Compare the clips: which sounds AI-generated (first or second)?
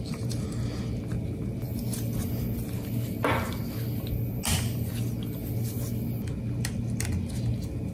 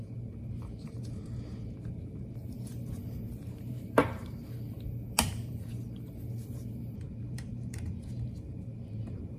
second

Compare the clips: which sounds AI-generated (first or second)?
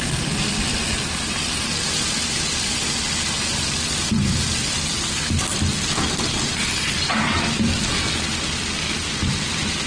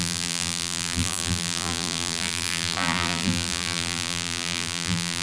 second